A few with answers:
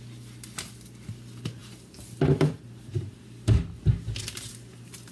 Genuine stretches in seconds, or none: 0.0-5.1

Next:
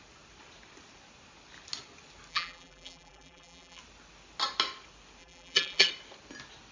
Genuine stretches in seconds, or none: 0.0-2.3; 3.8-5.2; 5.9-6.7

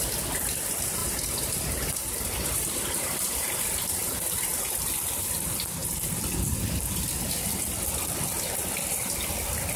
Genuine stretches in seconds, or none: 0.0-1.0; 4.6-9.8

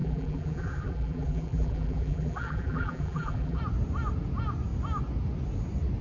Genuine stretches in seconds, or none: 3.6-6.0

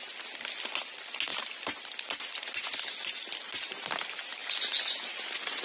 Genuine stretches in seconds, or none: 0.0-5.6

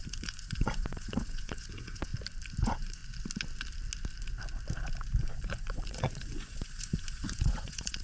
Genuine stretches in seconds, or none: 2.1-2.6; 3.0-5.2